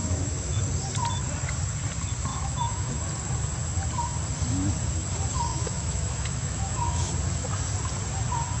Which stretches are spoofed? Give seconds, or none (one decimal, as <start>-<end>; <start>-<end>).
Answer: 0.0-0.6; 2.3-3.0; 5.5-7.1